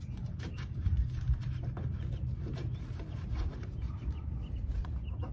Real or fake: fake